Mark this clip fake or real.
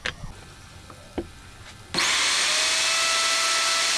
real